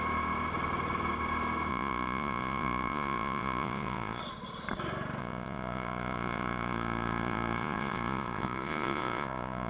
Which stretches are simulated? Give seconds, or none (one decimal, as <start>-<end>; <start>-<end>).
1.7-4.2; 5.2-9.7